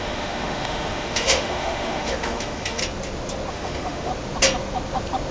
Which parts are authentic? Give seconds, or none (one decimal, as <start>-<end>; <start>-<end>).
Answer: 2.8-3.5; 4.1-5.3

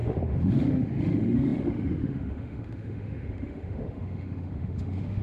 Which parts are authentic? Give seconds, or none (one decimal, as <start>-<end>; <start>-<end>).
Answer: none